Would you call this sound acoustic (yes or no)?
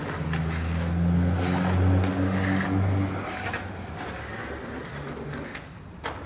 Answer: yes